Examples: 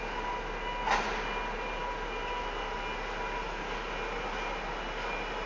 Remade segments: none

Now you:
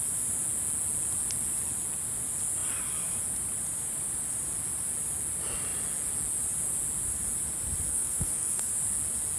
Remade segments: 7.9-8.7 (codec, SNAC)

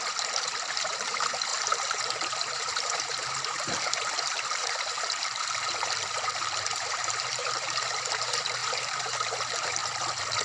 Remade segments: 0.0-9.8 (vocoder, BigVGAN v2)

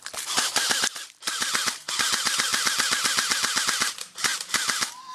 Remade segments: 0.0-2.5 (vocoder, BigVGAN v2); 3.6-5.1

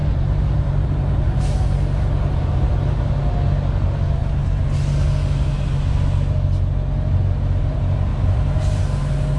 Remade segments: 0.0-1.4 (vocoder, BigVGAN v2); 8.1-8.8

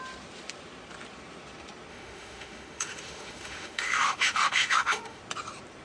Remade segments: 1.9-5.2 (autoencoder, DAC-VAE)